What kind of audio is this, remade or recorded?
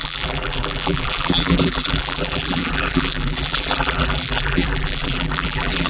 remade